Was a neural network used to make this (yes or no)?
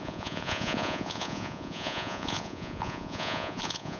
yes